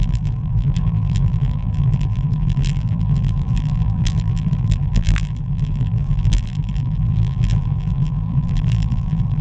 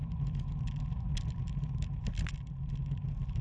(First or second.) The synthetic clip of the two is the first